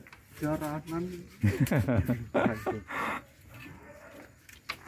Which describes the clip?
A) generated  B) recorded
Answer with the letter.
B